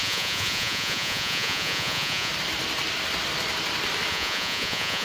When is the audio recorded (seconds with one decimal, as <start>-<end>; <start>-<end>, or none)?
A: 2.3-4.1